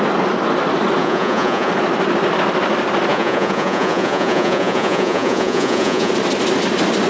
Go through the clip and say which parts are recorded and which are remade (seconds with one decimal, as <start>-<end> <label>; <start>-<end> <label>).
0.0-1.0 recorded; 1.0-1.7 remade; 1.7-3.1 recorded; 3.1-6.1 remade; 6.1-7.1 recorded